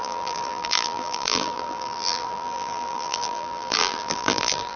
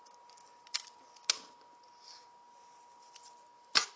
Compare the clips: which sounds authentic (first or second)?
second